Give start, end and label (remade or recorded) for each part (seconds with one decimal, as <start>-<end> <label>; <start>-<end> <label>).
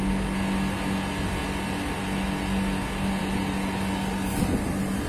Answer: 0.0-5.1 recorded